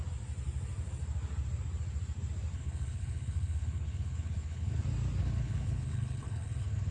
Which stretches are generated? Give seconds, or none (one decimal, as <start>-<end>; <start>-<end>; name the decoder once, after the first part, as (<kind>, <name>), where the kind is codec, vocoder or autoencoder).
2.5-4.8 (codec, HILCodec); 5.2-6.9